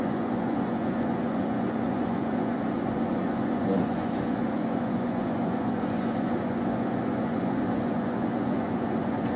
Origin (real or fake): fake